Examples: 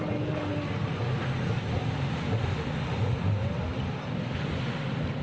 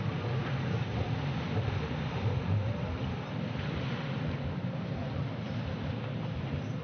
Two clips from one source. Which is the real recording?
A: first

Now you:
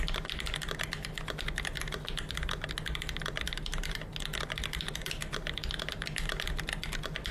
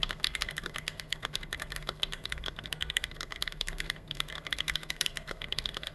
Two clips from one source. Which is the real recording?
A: first